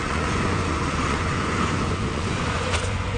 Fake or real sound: fake